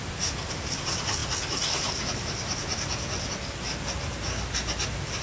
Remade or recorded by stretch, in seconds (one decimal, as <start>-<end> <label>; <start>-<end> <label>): 0.0-5.2 recorded